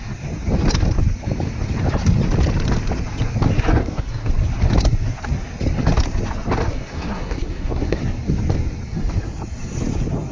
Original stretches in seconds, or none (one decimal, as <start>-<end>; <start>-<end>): 0.0-3.8; 4.3-6.7; 8.0-10.3